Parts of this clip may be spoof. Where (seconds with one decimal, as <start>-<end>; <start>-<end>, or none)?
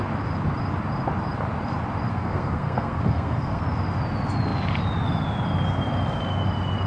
2.1-3.6